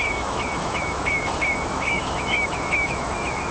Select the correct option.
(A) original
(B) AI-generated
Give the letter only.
B